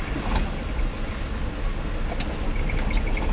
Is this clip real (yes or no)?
yes